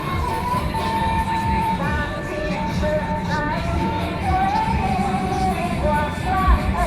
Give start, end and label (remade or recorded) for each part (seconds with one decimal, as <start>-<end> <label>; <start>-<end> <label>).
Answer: 0.0-1.0 recorded; 1.0-5.1 remade; 5.1-5.8 recorded; 5.8-6.9 remade